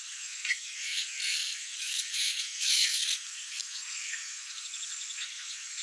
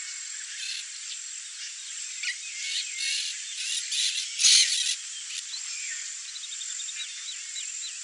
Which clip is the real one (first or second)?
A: second